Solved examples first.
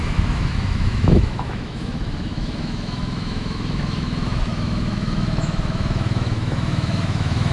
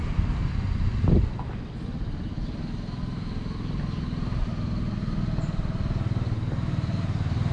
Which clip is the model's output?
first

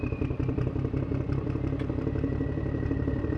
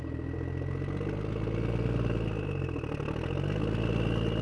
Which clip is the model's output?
first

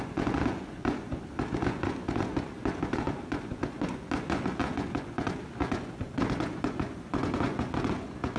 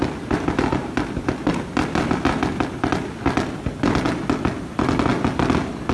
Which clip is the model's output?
first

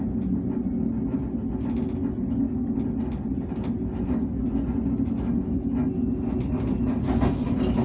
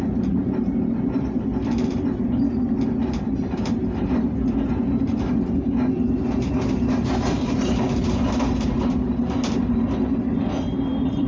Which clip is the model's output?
second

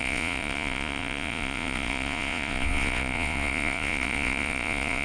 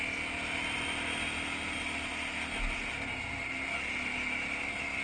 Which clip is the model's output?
first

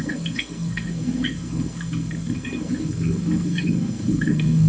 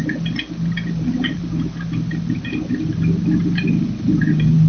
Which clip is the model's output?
first